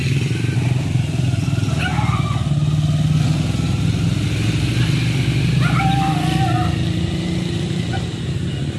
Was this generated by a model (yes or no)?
no